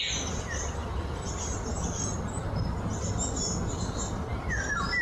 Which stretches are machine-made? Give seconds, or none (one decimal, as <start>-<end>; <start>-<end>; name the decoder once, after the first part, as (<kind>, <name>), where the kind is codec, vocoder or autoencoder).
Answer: 4.3-5.0 (vocoder, BigVGAN v2)